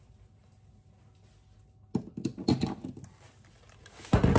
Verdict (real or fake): real